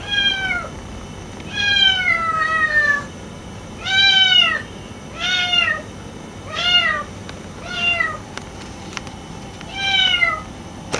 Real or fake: real